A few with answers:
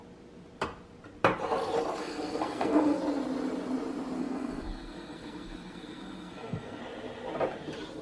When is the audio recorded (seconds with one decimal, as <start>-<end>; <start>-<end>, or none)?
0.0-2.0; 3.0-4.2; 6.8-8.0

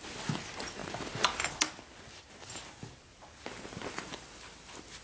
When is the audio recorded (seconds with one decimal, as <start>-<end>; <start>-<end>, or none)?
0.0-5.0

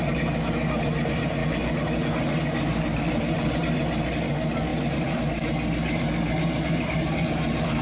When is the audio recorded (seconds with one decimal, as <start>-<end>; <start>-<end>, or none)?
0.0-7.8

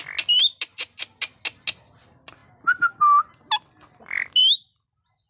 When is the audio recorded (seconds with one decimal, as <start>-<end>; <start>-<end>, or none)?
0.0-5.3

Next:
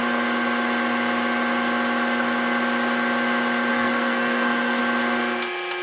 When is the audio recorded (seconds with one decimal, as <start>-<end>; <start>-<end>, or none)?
0.0-3.7; 4.8-5.8

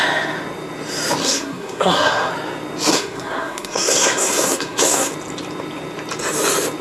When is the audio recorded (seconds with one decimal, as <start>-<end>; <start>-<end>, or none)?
0.0-1.2; 2.3-2.9; 5.1-6.8

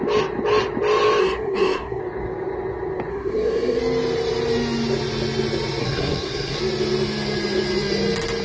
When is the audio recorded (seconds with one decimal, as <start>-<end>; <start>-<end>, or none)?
0.0-1.2; 2.0-3.1; 3.8-5.8; 6.6-8.4